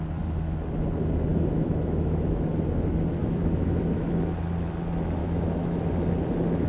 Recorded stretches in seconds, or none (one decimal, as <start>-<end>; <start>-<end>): 0.0-1.3; 2.5-3.2; 4.1-5.2; 5.9-6.7